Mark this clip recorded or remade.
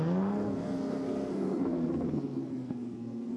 remade